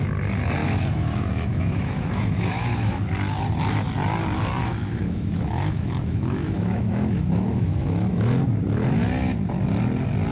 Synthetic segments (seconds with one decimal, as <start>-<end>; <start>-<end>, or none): 0.6-2.9; 4.6-8.3